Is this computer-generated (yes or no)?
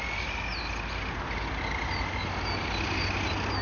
no